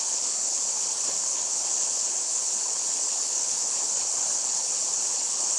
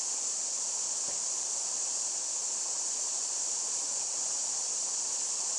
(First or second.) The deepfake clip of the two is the first